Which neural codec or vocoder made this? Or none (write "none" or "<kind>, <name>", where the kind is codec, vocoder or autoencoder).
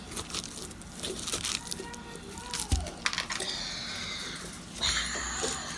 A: none